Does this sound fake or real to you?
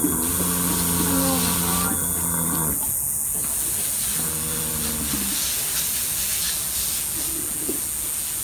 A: real